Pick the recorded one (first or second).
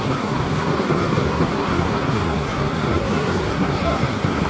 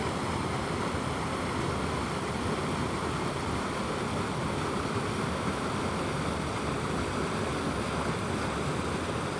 second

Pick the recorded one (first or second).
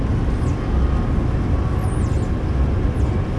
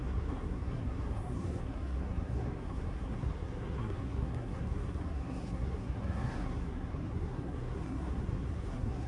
first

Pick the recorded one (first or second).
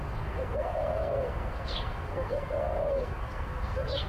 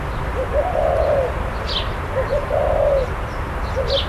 second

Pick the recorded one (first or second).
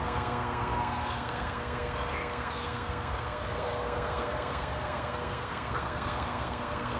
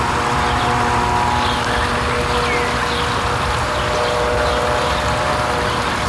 second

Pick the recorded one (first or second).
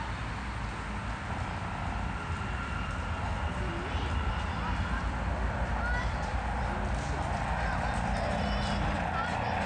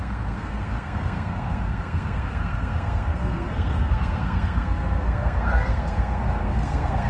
first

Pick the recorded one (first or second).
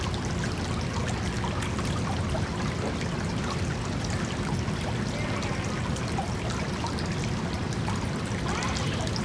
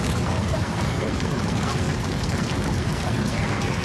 first